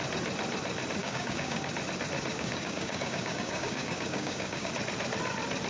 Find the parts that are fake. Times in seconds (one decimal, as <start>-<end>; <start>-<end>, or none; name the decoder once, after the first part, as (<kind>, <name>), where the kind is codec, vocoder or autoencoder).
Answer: 1.0-1.7 (codec, DAC); 2.3-4.7